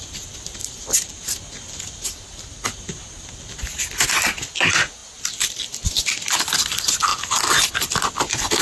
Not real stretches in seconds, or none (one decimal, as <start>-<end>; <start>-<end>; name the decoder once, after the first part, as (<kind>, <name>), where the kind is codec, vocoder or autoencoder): 0.6-3.3 (vocoder, BigVGAN v2); 7.1-7.7